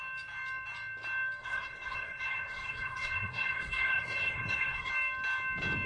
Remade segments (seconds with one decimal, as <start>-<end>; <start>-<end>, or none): 1.4-4.9